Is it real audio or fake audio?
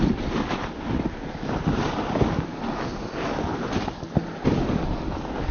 real